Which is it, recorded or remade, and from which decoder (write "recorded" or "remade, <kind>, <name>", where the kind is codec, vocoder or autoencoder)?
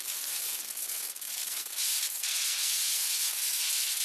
remade, codec, SNAC